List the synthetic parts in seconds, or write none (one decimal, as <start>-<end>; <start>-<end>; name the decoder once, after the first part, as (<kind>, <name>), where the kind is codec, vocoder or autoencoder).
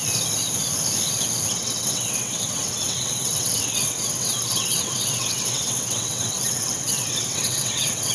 1.5-8.1 (vocoder, WaveNeXt)